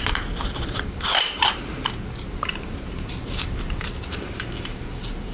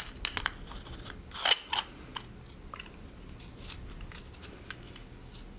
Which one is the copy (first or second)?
first